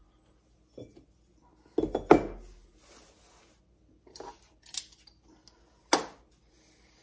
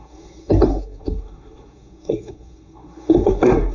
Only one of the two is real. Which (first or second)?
first